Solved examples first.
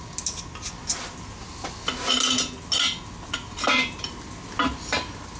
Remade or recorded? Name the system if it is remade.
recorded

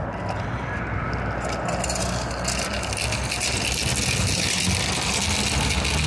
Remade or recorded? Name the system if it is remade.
recorded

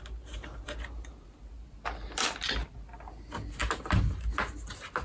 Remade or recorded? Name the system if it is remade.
recorded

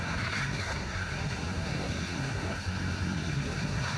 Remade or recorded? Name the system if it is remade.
remade, codec, SNAC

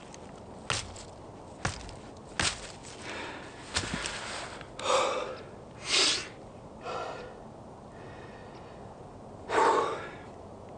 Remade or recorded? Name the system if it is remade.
recorded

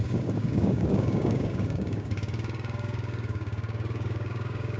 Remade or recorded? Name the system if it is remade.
remade, codec, DAC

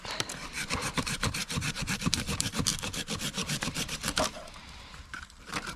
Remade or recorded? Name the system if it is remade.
remade, vocoder, BigVGAN v2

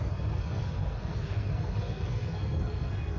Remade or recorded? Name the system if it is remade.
remade, codec, SNAC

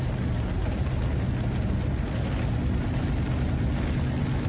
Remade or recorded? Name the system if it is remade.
recorded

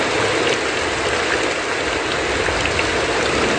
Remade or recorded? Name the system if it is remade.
recorded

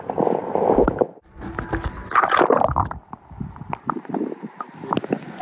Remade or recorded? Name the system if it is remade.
recorded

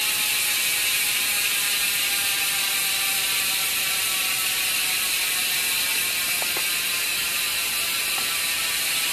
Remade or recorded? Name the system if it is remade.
recorded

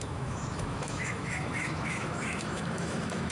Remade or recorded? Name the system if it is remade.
remade, autoencoder, DAC-VAE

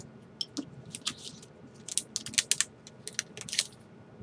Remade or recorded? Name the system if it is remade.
recorded